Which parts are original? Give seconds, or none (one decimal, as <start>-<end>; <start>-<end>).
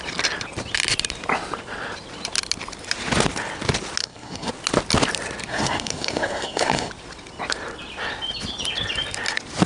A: 0.0-4.0; 4.5-5.5; 6.9-9.7